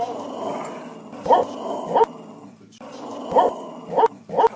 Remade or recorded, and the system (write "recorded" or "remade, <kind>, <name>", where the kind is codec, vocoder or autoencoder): recorded